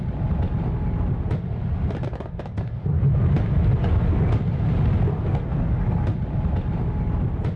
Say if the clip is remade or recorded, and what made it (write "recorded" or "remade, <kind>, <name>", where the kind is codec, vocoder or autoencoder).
recorded